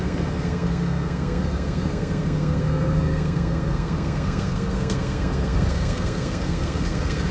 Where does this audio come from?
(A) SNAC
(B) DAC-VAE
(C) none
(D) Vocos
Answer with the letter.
A